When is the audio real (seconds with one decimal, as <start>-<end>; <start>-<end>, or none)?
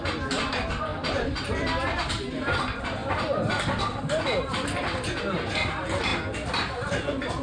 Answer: 0.0-0.9; 2.1-3.0; 5.2-7.4